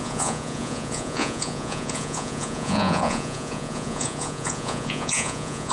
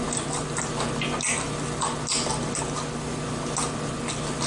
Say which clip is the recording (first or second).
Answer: second